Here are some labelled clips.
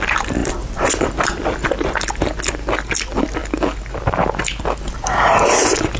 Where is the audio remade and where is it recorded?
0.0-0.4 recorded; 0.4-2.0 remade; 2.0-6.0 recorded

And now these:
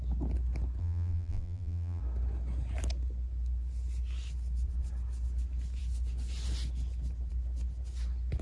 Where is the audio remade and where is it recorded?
0.0-0.8 recorded; 0.8-2.0 remade; 2.0-8.4 recorded

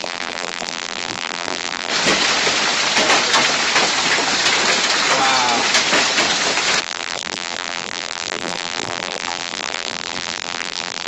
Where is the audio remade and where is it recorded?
0.0-1.9 remade; 1.9-6.8 recorded; 6.8-11.1 remade

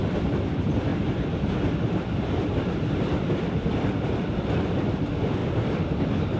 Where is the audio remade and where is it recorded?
0.0-5.4 remade; 5.4-6.4 recorded

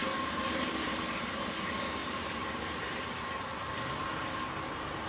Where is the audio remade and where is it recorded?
0.0-1.5 remade; 1.5-2.0 recorded; 2.0-3.5 remade; 3.5-5.1 recorded

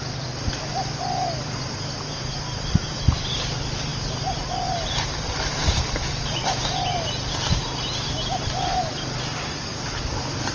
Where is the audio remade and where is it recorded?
0.0-10.5 recorded

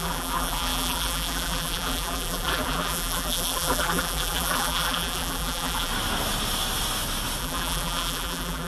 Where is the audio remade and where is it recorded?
0.0-5.9 remade; 5.9-7.4 recorded; 7.4-8.7 remade

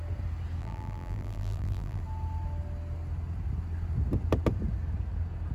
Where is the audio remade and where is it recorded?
0.0-0.6 recorded; 0.6-2.0 remade; 2.0-5.5 recorded